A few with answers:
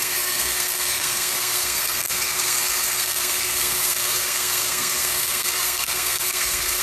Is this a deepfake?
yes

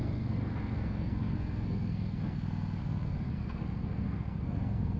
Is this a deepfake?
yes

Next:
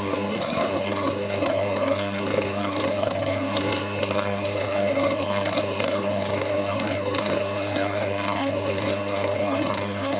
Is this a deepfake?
yes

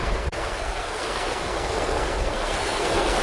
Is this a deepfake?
yes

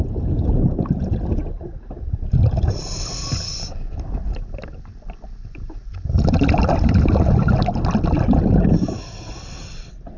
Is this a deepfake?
no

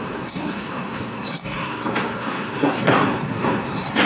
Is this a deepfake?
yes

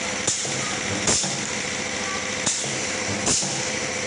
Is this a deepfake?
no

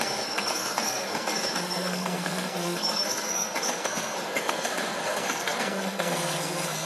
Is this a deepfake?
yes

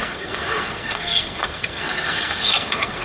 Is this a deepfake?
yes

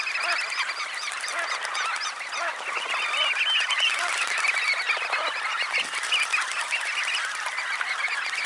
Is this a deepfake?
no